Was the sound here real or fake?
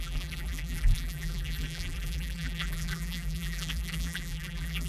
fake